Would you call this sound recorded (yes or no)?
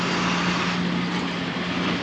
yes